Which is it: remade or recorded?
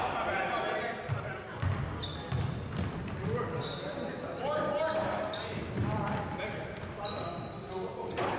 recorded